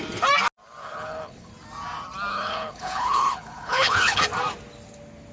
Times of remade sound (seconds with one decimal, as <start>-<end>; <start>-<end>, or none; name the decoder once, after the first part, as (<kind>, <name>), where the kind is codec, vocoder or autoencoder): 0.8-1.5 (codec, HILCodec); 2.3-4.2